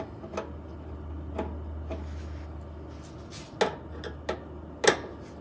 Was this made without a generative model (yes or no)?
yes